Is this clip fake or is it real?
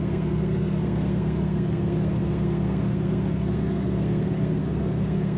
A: fake